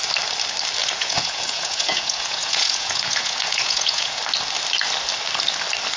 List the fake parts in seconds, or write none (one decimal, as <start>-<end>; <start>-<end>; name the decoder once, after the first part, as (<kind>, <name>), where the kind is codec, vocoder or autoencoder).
0.8-4.2 (vocoder, Vocos)